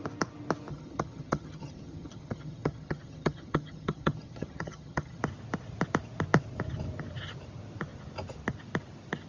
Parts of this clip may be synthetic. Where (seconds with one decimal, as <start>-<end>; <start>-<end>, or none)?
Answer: 0.7-5.2